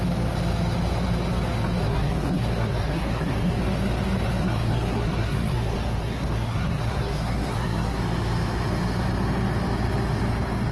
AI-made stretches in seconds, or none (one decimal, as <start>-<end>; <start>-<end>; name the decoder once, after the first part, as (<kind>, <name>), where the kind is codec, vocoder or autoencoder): 1.8-3.6 (codec, SNAC); 4.4-8.0